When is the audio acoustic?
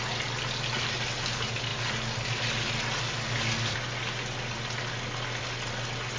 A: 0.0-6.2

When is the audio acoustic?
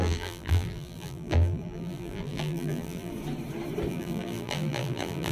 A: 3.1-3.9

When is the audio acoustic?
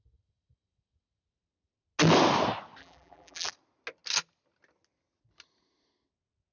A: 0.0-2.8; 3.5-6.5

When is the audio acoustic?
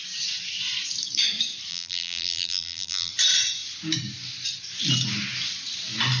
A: 0.0-1.7; 3.1-6.2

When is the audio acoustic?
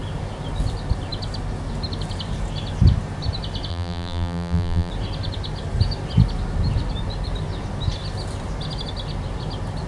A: 0.0-3.7; 4.9-9.9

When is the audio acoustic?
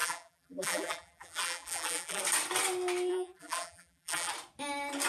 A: 2.2-3.1; 4.3-5.1